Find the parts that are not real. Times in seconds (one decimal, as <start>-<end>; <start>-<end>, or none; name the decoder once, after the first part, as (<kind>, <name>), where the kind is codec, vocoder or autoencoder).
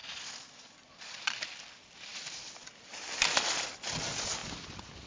none